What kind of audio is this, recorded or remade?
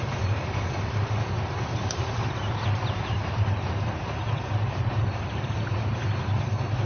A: remade